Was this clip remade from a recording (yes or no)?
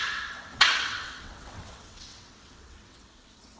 yes